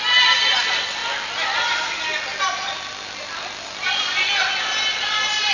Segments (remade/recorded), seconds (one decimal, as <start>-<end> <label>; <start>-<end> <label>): 0.0-5.5 recorded